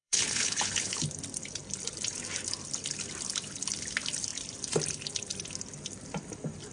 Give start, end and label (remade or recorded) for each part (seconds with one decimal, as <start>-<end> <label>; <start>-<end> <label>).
0.0-1.0 remade; 1.0-6.7 recorded